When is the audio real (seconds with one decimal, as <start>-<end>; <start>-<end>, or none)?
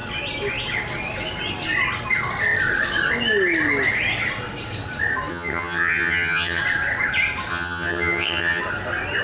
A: 0.0-5.3; 6.6-7.5; 8.6-9.2